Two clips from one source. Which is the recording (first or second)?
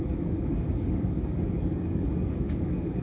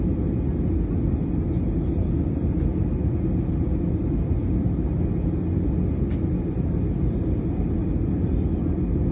second